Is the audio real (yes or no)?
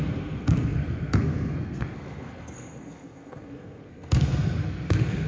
no